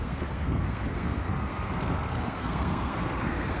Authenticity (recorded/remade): remade